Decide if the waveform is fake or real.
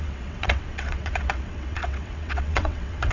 fake